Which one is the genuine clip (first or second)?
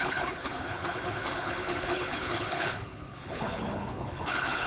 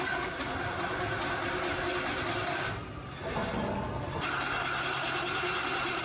second